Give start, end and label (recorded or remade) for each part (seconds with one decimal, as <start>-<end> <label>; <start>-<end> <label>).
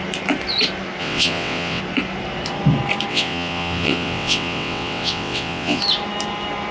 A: 0.0-1.0 recorded; 1.0-1.8 remade; 1.8-3.1 recorded; 3.1-5.8 remade; 5.8-6.7 recorded